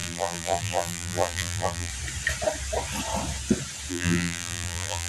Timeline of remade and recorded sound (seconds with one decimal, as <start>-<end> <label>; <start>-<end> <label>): 0.0-1.9 remade; 1.9-3.9 recorded; 3.9-5.1 remade

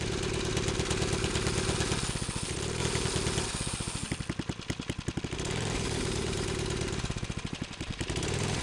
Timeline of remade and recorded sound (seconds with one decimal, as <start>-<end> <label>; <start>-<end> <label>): 0.0-0.5 remade; 0.5-2.4 recorded; 2.4-2.8 remade; 2.8-5.2 recorded; 5.2-8.6 remade

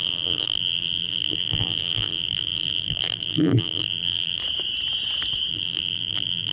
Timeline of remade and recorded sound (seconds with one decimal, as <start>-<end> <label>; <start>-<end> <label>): 0.0-4.4 remade; 4.4-5.5 recorded; 5.5-6.5 remade

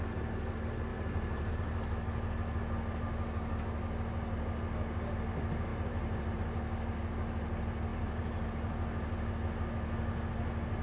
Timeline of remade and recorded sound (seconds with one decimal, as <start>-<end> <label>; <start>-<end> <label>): 0.0-0.9 recorded; 0.9-1.5 remade; 1.5-5.7 recorded; 5.7-6.4 remade; 6.4-7.9 recorded; 7.9-8.5 remade; 8.5-10.8 recorded

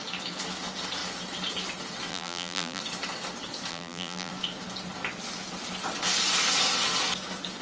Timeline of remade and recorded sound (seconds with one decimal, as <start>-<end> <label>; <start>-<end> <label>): 0.0-2.1 recorded; 2.1-2.8 remade; 2.8-3.7 recorded; 3.7-4.3 remade; 4.3-7.6 recorded

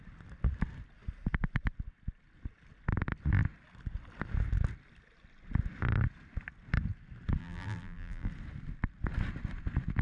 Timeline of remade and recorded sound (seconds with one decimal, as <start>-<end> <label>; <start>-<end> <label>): 0.0-7.4 recorded; 7.4-8.3 remade; 8.3-10.0 recorded

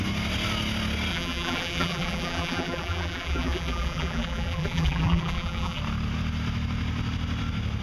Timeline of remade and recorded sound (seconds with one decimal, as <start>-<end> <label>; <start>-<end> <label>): 0.0-1.1 recorded; 1.1-5.8 remade; 5.8-7.8 recorded